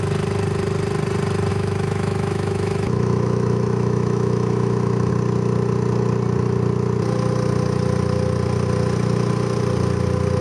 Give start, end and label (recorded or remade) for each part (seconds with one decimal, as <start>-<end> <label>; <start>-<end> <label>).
0.0-1.5 recorded; 1.5-5.1 remade; 5.1-10.4 recorded